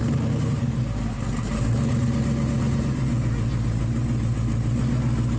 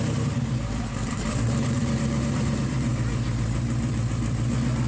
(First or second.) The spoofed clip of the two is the second